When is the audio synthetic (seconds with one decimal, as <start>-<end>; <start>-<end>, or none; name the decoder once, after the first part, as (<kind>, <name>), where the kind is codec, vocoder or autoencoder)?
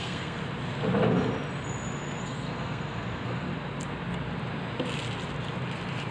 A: 0.0-0.4 (codec, SNAC); 2.2-3.5